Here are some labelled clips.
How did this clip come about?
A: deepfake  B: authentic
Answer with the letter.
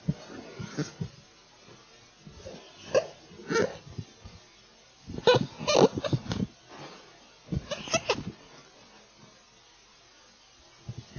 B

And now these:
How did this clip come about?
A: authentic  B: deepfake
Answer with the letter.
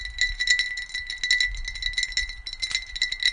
A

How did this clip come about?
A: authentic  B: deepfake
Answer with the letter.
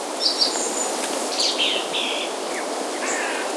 A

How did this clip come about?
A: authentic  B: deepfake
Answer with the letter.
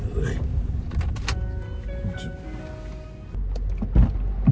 A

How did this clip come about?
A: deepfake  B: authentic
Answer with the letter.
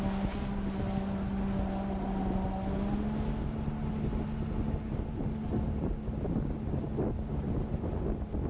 B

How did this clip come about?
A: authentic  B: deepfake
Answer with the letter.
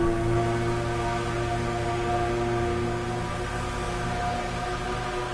A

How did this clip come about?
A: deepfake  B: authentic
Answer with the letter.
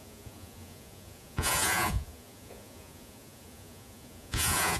A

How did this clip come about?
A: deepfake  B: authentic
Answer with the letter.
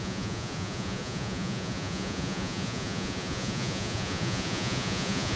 A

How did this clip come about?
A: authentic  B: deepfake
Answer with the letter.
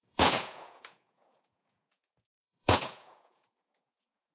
B